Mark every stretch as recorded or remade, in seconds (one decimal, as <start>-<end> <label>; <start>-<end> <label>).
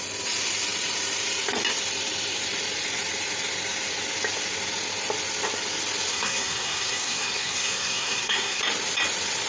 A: 0.0-6.1 recorded; 6.1-8.6 remade; 8.6-9.5 recorded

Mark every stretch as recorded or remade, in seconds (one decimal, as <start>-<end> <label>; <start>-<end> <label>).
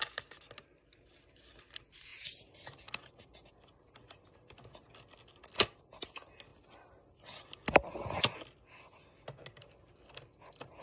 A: 0.0-10.8 recorded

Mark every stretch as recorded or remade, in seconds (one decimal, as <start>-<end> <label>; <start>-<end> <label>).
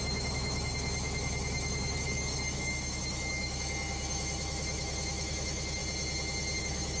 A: 0.0-5.8 remade; 5.8-6.6 recorded; 6.6-7.0 remade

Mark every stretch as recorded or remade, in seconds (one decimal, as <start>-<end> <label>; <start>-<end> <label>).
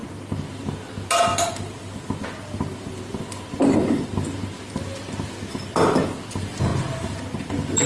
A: 0.0-1.3 recorded; 1.3-2.1 remade; 2.1-7.9 recorded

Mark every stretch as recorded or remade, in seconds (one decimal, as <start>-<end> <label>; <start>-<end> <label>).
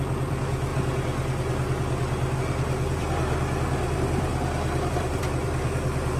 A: 0.0-0.7 remade; 0.7-2.4 recorded; 2.4-4.3 remade; 4.3-4.9 recorded; 4.9-6.2 remade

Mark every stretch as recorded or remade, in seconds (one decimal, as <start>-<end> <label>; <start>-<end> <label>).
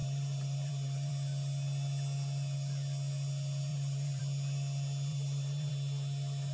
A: 0.0-1.1 remade; 1.1-3.7 recorded; 3.7-4.2 remade; 4.2-5.1 recorded; 5.1-5.7 remade; 5.7-6.5 recorded